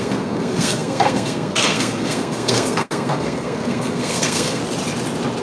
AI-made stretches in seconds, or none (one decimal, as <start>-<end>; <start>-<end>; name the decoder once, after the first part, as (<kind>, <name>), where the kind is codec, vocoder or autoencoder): 0.0-4.6 (codec, SNAC)